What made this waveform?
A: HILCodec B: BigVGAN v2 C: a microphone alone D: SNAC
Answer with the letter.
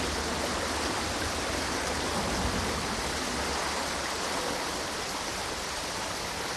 C